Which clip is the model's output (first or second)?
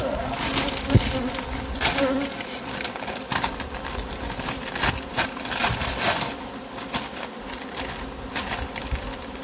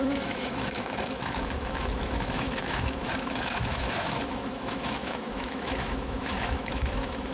second